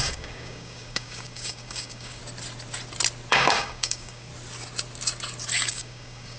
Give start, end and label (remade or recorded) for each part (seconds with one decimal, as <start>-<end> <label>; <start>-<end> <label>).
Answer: 0.0-2.2 remade; 2.2-3.3 recorded; 3.3-4.3 remade; 4.3-5.7 recorded; 5.7-6.4 remade